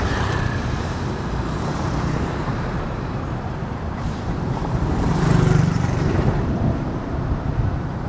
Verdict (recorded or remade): remade